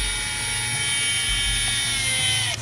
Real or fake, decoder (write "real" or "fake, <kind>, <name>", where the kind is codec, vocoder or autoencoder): real